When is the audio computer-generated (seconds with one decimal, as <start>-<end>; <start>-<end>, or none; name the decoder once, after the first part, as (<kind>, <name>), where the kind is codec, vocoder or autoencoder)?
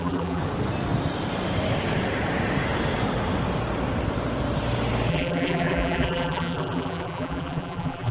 0.0-0.4 (vocoder, BigVGAN v2); 5.1-8.1